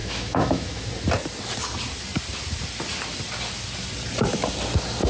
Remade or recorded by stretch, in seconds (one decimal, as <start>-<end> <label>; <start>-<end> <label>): 0.0-0.9 remade; 0.9-5.1 recorded